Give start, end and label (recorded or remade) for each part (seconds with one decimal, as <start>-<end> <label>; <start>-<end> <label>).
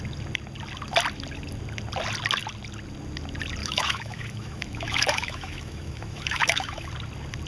0.0-3.6 recorded; 3.6-6.9 remade; 6.9-7.5 recorded